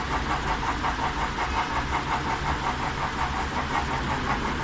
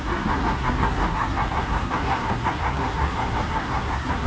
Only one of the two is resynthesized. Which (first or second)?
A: second